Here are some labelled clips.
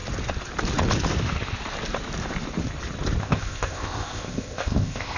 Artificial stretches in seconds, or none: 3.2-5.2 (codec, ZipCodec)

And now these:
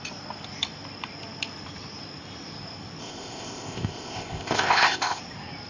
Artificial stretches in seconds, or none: 3.0-5.2 (codec, ZipCodec)

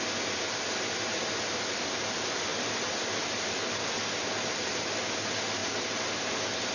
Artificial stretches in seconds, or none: none

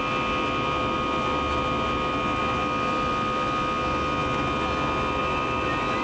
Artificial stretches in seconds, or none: none

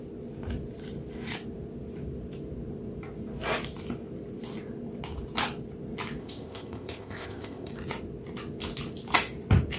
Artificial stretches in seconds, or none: 6.2-7.7 (codec, ZipCodec)

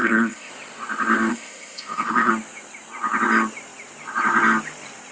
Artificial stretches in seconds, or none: 0.0-0.5 (codec, ZipCodec); 1.3-2.3